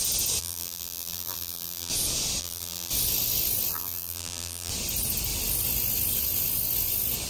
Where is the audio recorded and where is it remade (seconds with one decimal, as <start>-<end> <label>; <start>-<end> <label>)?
0.0-0.4 recorded; 0.4-1.9 remade; 1.9-2.4 recorded; 2.4-2.9 remade; 2.9-3.7 recorded; 3.7-4.7 remade; 4.7-7.3 recorded